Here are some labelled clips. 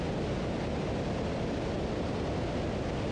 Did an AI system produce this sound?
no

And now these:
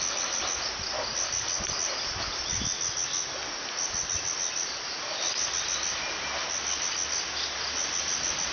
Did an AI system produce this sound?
no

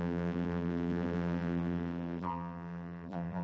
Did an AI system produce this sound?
yes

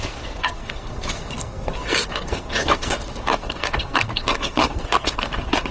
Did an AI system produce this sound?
yes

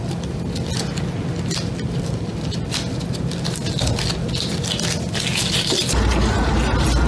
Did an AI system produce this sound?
no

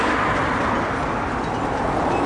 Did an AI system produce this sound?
no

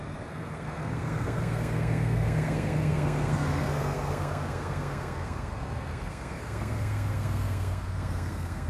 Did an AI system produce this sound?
yes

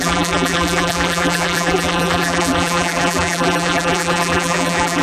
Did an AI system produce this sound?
yes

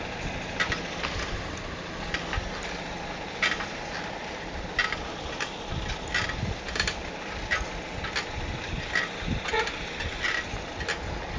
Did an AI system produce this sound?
no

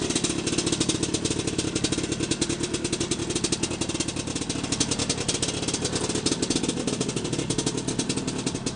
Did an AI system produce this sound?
no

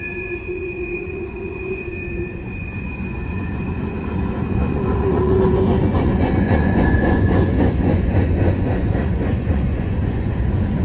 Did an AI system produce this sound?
yes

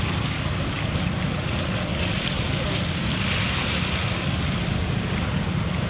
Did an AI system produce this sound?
no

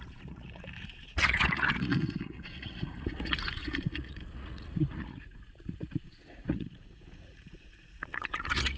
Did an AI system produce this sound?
yes